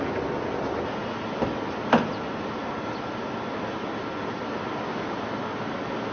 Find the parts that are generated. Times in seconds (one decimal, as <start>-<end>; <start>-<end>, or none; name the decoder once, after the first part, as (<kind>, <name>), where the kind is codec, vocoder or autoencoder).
none